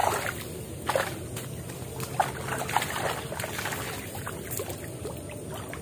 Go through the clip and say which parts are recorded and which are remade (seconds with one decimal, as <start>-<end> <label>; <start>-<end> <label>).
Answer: 0.0-5.8 recorded